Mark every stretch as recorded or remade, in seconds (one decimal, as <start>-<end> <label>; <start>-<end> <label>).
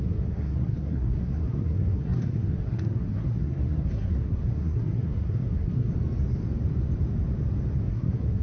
0.0-5.9 remade; 5.9-7.9 recorded; 7.9-8.4 remade